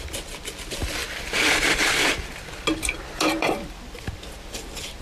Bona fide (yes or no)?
no